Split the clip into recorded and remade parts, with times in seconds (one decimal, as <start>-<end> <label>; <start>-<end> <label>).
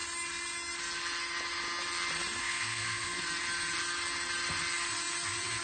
0.0-2.4 recorded; 2.4-3.2 remade; 3.2-5.6 recorded